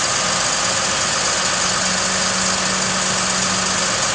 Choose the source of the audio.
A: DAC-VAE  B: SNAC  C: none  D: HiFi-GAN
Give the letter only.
C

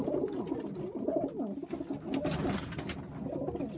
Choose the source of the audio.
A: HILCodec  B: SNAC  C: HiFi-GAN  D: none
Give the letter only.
D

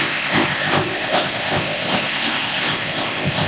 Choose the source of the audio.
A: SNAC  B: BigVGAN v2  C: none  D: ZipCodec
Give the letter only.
D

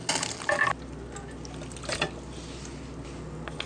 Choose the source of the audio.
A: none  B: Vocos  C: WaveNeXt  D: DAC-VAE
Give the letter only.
A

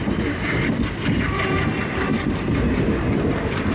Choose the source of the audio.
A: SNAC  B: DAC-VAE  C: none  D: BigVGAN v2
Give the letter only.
C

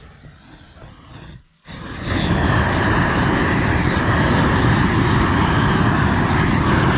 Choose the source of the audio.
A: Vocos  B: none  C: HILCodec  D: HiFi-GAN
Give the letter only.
B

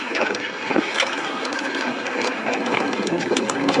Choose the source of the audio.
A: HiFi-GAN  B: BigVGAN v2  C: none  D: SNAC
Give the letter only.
D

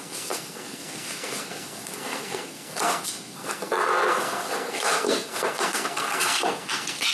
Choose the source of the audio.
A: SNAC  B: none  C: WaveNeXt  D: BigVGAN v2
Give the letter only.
A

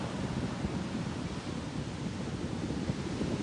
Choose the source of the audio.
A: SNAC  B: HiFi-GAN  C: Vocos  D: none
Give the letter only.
D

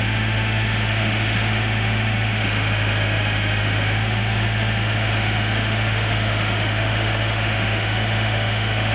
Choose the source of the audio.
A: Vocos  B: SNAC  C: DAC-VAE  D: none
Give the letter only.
C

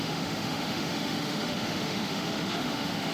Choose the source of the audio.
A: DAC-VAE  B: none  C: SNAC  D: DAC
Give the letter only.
A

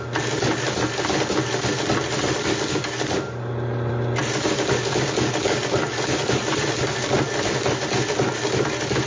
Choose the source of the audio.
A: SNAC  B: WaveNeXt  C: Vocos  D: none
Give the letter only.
D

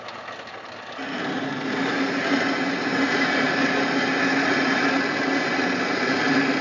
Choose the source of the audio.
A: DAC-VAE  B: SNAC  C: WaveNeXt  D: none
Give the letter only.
D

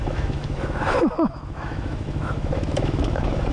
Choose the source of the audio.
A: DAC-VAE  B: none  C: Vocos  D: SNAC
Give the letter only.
A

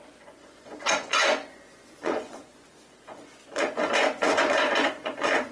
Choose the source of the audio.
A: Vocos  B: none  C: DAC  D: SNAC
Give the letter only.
A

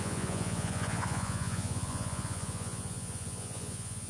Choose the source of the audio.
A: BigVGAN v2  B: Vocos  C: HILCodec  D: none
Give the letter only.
B